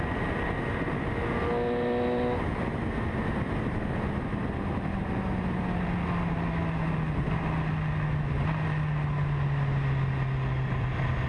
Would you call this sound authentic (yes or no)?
yes